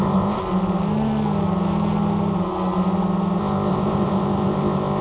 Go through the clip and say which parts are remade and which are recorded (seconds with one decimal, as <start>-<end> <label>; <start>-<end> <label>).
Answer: 0.0-0.4 remade; 0.4-3.4 recorded; 3.4-5.0 remade